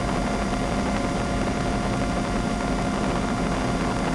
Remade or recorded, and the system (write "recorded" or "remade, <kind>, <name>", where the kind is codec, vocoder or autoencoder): recorded